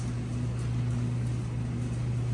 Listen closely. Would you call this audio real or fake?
real